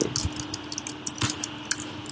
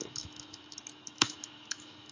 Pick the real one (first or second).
first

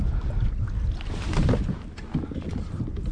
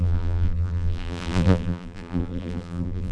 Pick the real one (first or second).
first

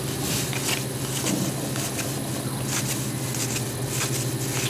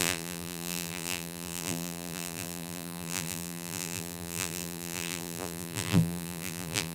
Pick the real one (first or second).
first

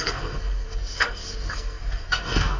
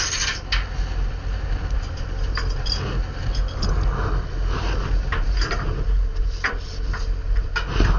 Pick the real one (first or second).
second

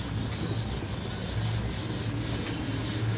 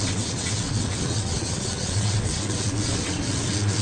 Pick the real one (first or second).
first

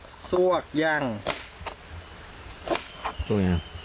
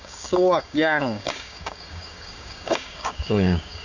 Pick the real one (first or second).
first